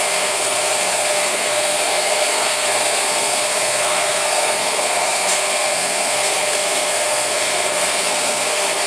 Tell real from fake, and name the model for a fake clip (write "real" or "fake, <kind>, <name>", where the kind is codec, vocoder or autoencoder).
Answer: fake, codec, SNAC